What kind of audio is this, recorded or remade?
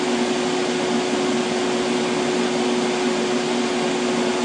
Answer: recorded